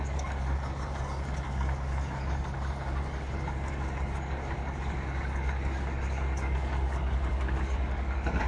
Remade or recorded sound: remade